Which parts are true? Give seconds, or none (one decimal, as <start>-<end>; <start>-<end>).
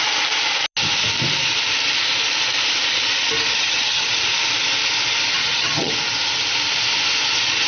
0.0-3.5; 4.1-5.4; 5.9-7.7